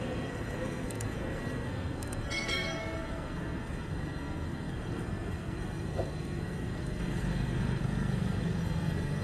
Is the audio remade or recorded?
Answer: remade